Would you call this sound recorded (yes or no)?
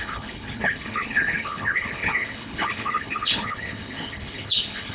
no